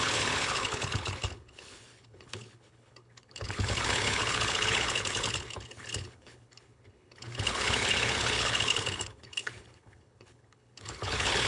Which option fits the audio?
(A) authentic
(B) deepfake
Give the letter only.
B